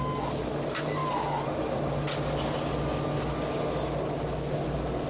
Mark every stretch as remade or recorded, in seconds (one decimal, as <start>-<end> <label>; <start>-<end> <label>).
0.0-5.1 recorded